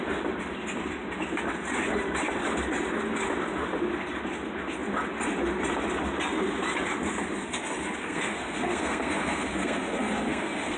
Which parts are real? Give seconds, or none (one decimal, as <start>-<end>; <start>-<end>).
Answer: 0.0-8.0